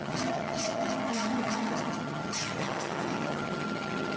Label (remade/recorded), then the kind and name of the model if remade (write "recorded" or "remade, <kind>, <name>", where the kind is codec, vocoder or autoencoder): remade, vocoder, HiFi-GAN